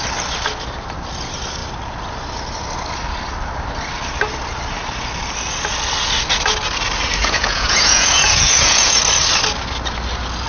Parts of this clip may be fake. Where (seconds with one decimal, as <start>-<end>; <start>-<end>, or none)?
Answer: 7.2-9.0

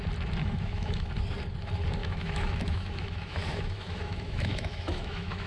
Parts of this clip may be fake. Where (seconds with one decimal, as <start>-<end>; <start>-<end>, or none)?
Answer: 0.4-1.1; 2.0-5.5

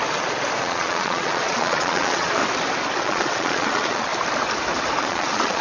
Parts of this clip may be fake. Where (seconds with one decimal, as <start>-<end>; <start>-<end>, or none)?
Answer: 0.6-2.4; 3.0-4.1; 5.0-5.6

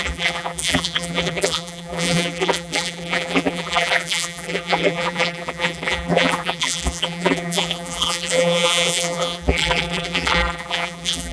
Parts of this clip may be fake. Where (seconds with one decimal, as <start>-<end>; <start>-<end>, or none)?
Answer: 0.0-11.3

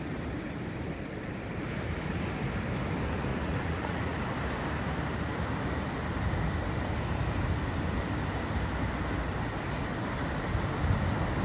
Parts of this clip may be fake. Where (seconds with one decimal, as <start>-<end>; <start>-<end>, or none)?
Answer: 3.3-4.2

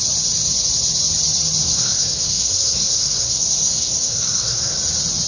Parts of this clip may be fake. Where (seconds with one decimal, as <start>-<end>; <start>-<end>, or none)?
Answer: 1.6-4.8

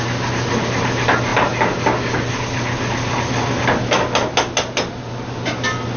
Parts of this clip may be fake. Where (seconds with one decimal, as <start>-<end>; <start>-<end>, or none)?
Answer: none